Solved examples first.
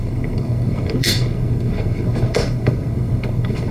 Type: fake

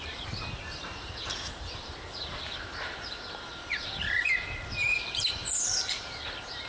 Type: fake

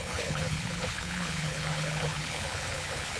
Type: fake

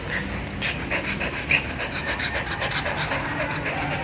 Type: real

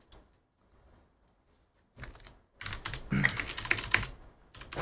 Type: real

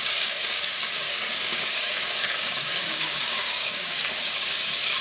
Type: fake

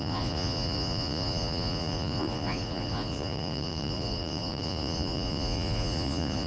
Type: fake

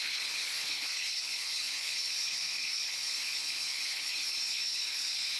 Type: fake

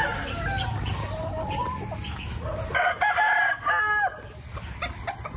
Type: real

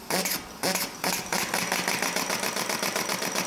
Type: real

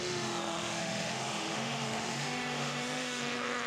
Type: fake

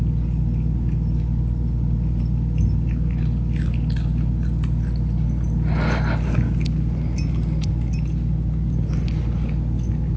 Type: real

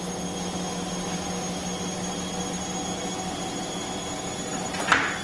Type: real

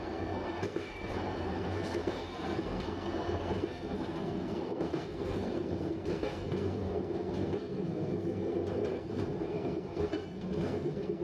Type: fake